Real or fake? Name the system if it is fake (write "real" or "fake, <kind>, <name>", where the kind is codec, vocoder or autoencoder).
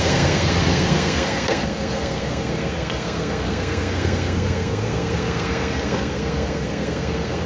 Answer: fake, codec, SNAC